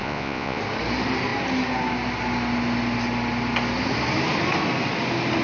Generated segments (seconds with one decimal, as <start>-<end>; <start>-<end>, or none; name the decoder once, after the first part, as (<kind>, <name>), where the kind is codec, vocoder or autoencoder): 0.0-0.6 (vocoder, Vocos)